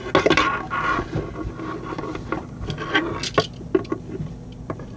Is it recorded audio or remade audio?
recorded